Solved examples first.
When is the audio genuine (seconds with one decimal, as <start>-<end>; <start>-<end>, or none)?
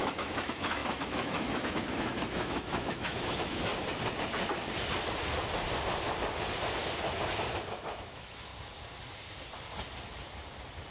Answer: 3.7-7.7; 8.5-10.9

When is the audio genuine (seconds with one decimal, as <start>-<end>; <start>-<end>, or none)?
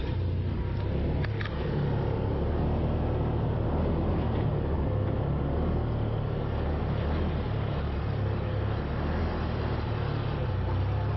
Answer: 0.0-11.2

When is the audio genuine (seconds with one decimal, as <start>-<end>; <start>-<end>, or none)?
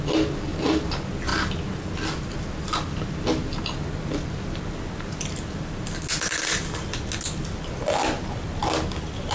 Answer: 0.0-9.3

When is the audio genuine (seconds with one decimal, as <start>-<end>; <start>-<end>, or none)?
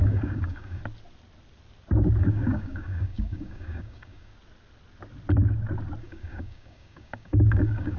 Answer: 0.8-2.2; 4.3-6.0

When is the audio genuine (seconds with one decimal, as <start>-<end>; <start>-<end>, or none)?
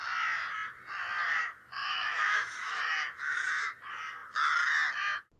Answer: 0.0-1.8; 2.8-5.4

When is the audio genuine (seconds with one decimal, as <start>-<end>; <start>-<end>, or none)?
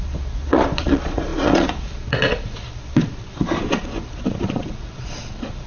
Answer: none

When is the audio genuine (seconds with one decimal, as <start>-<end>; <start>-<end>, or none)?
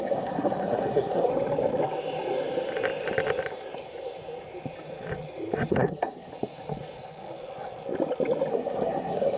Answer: 1.3-5.7; 6.3-8.5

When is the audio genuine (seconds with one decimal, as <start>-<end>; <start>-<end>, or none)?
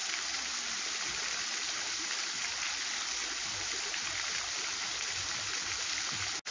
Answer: 0.0-6.5